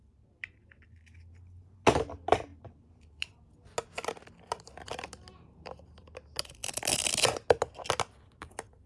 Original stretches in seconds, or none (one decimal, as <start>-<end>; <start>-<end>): 0.0-8.9